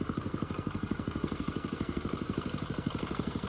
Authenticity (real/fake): fake